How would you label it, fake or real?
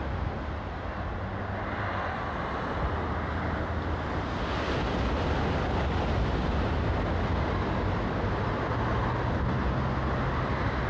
real